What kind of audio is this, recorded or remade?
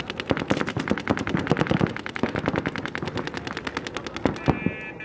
recorded